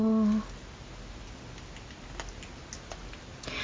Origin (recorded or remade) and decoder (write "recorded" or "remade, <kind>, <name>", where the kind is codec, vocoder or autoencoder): recorded